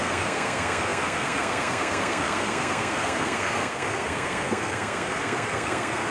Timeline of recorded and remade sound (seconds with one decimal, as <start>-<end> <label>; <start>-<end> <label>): 0.0-6.1 remade